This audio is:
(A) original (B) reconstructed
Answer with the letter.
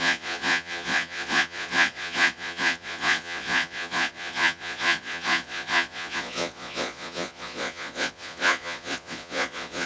B